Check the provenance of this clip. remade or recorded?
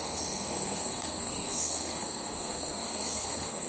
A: remade